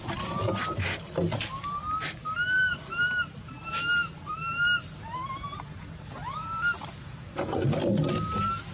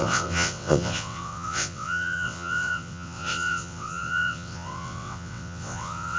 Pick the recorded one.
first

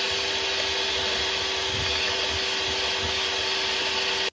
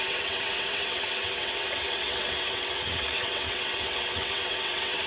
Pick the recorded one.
first